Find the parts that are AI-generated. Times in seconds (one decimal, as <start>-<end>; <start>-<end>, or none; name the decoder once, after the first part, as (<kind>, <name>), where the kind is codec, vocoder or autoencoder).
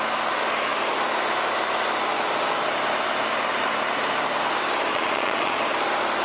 4.9-5.6 (vocoder, Vocos)